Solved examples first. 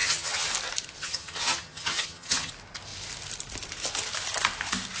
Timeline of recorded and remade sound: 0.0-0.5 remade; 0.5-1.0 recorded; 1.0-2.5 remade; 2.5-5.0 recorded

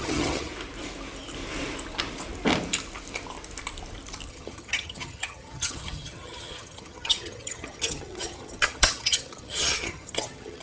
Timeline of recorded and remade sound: 0.0-0.5 remade; 0.5-4.3 recorded; 4.3-10.6 remade